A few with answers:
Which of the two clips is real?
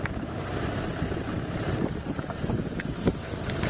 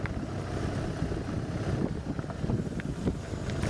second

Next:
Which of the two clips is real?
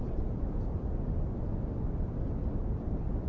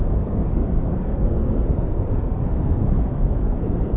first